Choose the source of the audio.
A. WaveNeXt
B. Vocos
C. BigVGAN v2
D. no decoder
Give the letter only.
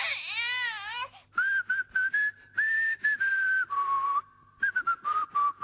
D